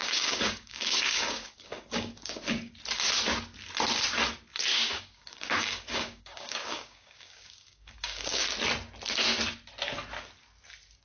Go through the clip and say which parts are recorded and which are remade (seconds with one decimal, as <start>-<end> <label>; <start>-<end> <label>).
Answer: 0.0-2.7 remade; 2.7-4.7 recorded; 4.7-8.4 remade; 8.4-11.0 recorded